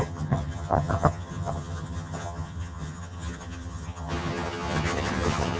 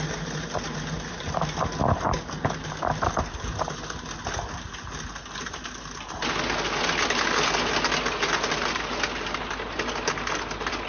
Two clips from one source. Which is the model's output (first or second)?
first